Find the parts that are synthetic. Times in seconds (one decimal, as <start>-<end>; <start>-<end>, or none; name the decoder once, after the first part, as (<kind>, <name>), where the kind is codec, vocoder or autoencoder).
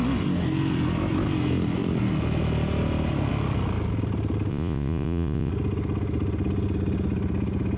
4.5-5.5 (vocoder, Vocos)